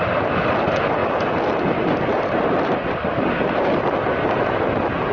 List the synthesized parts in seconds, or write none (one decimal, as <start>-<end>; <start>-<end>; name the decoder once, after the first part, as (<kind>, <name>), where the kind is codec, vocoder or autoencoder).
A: none